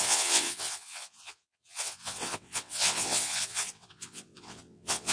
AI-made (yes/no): yes